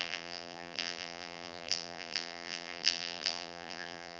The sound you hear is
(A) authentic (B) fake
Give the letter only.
B